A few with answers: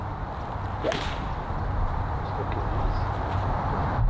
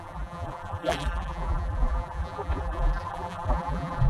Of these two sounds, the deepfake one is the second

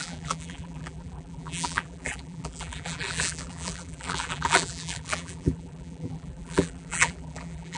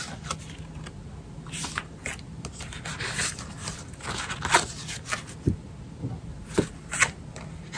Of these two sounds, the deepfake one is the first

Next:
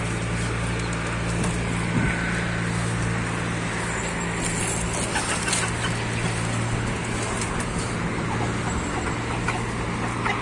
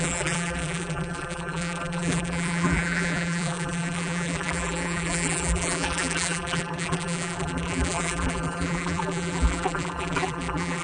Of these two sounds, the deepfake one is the second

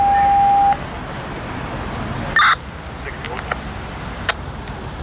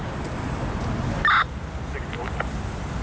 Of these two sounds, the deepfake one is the second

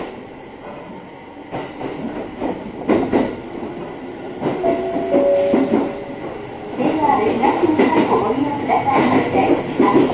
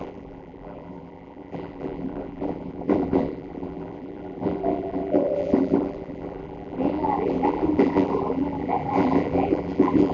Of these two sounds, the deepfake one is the second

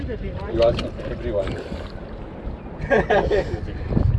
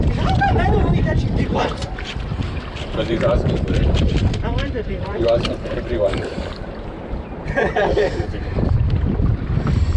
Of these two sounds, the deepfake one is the second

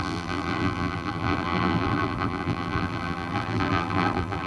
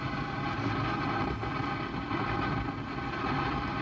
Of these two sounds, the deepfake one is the first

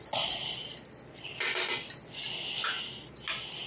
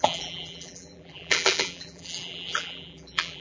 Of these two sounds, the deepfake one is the second